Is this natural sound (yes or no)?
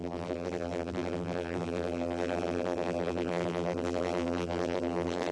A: no